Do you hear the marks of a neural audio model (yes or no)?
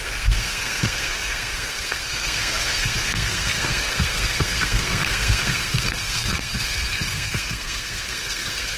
yes